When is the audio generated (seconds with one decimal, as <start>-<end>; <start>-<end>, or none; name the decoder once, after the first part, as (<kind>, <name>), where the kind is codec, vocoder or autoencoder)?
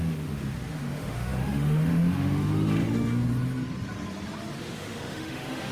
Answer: 0.0-3.3 (autoencoder, DAC-VAE); 4.6-5.7